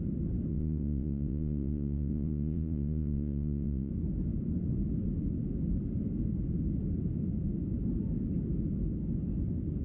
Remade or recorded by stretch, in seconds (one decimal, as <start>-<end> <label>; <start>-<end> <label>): 0.0-0.5 recorded; 0.5-3.9 remade; 3.9-9.8 recorded